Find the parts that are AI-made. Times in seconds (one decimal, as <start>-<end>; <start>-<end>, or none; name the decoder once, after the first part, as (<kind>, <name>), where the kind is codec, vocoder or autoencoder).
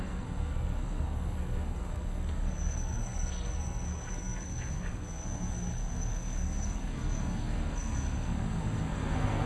0.0-9.5 (codec, SNAC)